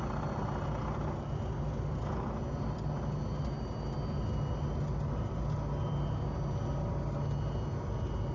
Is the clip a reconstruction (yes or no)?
no